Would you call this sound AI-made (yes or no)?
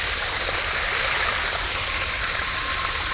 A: no